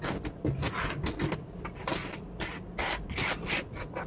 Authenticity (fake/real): real